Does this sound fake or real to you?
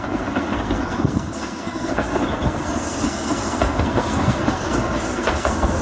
fake